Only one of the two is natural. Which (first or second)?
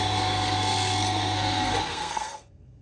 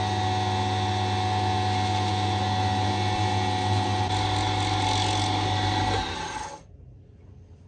second